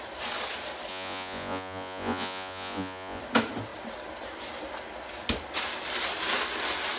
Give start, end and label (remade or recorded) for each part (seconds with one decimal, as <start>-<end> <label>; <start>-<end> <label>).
0.0-0.9 recorded; 0.9-3.2 remade; 3.2-7.0 recorded